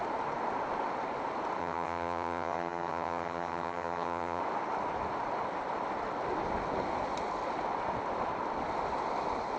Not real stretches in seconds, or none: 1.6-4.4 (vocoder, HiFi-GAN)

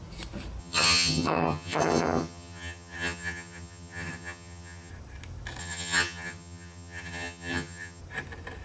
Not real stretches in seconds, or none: 0.6-4.9 (vocoder, HiFi-GAN); 5.6-8.0

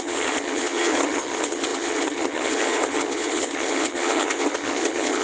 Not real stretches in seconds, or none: 0.0-5.2 (vocoder, HiFi-GAN)

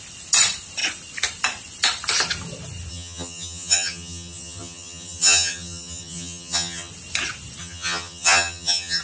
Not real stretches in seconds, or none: 2.9-6.9 (vocoder, HiFi-GAN); 7.6-9.0

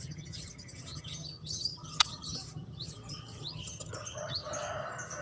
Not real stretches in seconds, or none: 0.0-4.4 (vocoder, HiFi-GAN)